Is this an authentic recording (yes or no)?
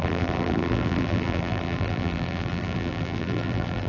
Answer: no